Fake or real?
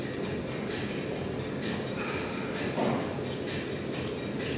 real